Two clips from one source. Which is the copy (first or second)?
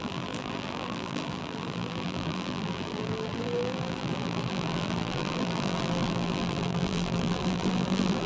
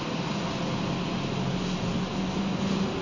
first